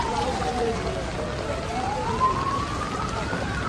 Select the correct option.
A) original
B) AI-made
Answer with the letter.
A